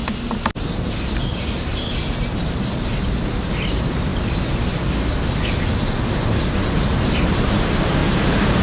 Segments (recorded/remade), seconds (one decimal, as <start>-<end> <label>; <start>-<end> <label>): 0.0-0.6 recorded; 0.6-4.1 remade; 4.1-6.4 recorded; 6.4-8.0 remade; 8.0-8.6 recorded